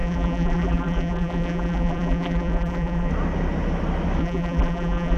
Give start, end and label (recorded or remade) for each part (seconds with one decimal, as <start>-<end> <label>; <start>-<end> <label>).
0.0-3.1 remade; 3.1-4.2 recorded; 4.2-5.2 remade